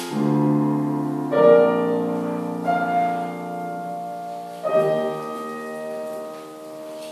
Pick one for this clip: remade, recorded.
recorded